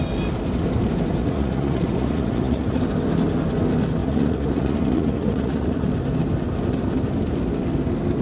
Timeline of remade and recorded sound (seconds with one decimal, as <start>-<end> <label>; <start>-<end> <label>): 0.0-1.2 recorded; 1.2-2.8 remade; 2.8-4.0 recorded; 4.0-5.9 remade; 5.9-8.2 recorded